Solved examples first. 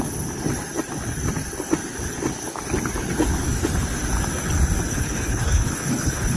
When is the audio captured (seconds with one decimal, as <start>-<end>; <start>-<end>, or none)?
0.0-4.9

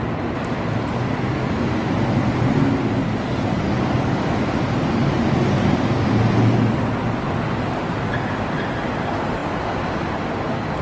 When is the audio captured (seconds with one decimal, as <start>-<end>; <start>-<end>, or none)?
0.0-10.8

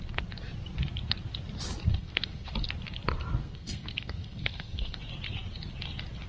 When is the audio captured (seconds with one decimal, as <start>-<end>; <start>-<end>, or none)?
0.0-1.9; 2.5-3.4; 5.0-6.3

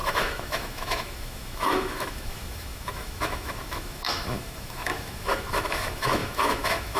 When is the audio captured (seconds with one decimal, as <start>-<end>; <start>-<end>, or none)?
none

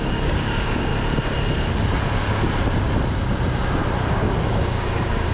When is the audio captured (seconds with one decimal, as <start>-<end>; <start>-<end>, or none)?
0.9-4.1

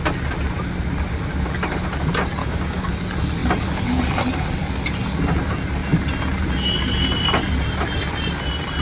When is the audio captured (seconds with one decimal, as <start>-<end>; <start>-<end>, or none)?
0.0-2.4; 2.9-8.8